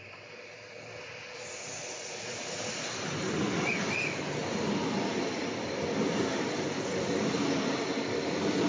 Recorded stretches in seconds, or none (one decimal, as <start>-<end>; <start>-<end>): 0.0-8.7